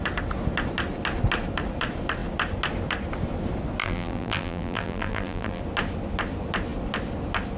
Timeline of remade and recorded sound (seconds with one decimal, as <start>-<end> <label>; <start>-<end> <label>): 0.0-3.8 recorded; 3.8-5.6 remade; 5.6-7.6 recorded